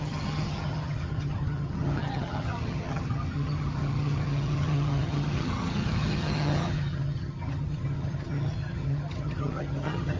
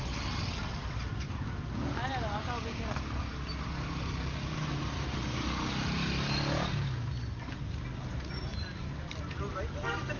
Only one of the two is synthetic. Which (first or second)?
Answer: first